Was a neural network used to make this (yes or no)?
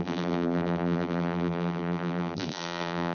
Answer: yes